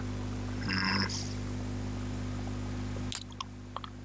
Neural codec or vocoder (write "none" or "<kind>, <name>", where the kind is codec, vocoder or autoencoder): none